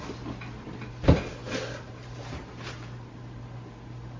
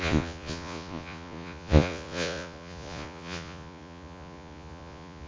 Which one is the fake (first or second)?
second